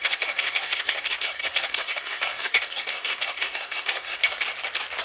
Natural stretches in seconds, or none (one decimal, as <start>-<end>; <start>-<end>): 4.2-5.0